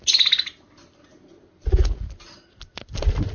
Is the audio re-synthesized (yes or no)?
no